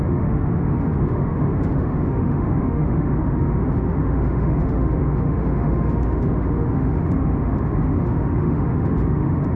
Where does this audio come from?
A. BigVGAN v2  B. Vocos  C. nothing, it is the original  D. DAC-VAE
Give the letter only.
D